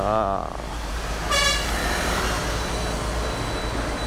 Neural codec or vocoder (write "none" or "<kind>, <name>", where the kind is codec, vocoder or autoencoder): none